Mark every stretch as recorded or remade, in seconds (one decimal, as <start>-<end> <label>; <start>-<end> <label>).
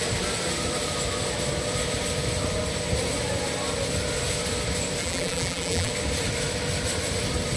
0.0-5.0 recorded; 5.0-5.9 remade; 5.9-7.6 recorded